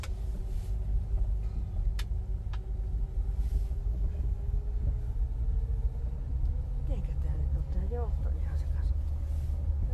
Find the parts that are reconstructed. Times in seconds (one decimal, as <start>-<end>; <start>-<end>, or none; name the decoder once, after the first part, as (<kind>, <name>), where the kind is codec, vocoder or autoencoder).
3.8-5.0 (codec, DAC); 7.6-8.2